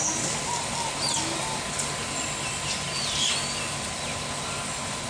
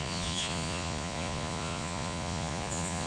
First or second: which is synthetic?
second